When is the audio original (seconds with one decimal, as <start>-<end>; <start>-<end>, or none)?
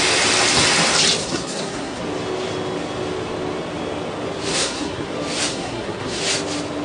0.0-1.2; 2.0-4.5; 5.1-5.5; 6.2-6.8